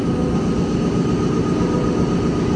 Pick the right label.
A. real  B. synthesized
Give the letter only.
A